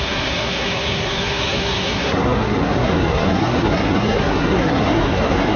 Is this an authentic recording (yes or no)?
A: no